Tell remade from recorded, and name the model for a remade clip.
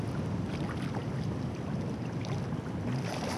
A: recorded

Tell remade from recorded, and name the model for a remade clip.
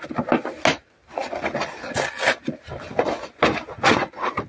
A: recorded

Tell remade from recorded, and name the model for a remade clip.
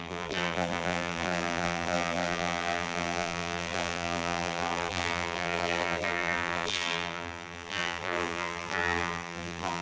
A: remade, vocoder, BigVGAN v2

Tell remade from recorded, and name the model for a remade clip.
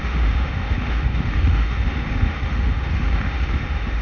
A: remade, autoencoder, DAC-VAE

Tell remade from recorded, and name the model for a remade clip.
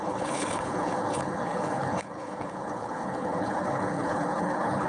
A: remade, codec, HILCodec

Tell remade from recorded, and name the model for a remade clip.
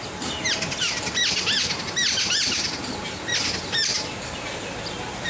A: recorded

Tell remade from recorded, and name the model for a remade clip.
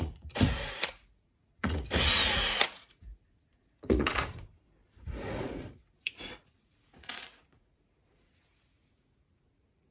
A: remade, vocoder, Vocos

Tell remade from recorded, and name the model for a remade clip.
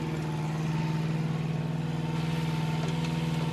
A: recorded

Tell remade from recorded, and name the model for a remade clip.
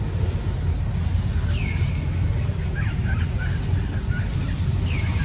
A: recorded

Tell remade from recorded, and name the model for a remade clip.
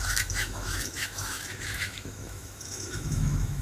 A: remade, autoencoder, DAC-VAE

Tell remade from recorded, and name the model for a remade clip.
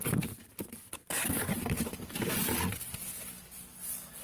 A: recorded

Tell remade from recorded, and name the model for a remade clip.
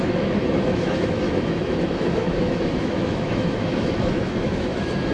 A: remade, autoencoder, DAC-VAE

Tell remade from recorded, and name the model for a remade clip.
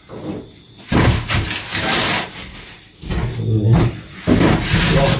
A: recorded